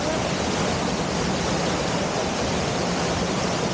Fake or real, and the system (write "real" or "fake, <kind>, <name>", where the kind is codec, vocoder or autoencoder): real